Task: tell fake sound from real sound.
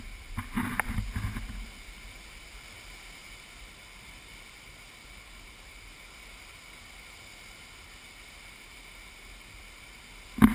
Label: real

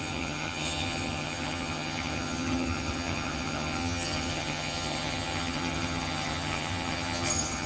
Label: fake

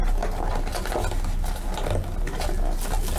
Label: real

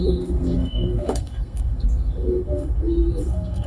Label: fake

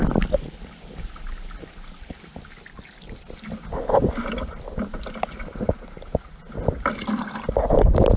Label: real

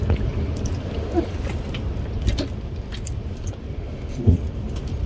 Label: real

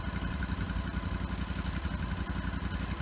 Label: real